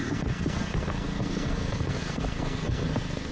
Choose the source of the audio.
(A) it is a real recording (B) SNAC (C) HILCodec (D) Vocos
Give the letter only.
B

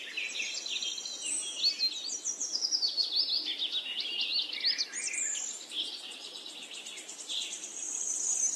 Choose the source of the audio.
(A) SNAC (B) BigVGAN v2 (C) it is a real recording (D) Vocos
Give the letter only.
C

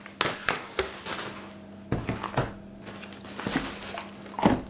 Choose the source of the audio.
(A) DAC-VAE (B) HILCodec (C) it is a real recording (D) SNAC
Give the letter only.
C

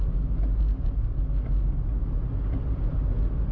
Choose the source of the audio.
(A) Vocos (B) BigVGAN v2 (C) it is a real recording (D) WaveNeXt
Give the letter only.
C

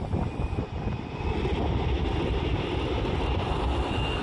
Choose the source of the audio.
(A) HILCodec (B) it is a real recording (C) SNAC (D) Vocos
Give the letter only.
B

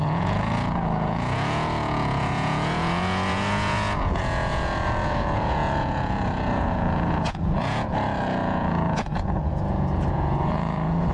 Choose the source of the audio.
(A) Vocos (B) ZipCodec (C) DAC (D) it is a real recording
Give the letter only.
A